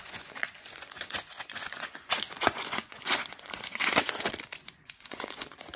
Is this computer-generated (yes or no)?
yes